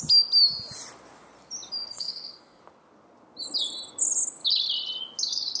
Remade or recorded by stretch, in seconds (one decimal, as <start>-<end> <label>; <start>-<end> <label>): 0.0-1.9 recorded; 1.9-2.6 remade; 2.6-5.6 recorded